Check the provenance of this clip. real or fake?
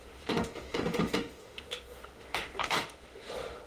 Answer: fake